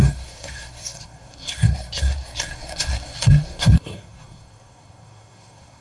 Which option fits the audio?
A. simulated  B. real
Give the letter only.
A